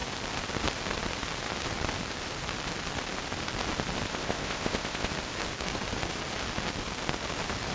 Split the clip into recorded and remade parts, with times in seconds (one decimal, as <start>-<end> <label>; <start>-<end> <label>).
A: 0.0-4.1 recorded; 4.1-5.1 remade; 5.1-7.7 recorded